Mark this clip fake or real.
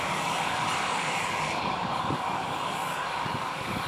fake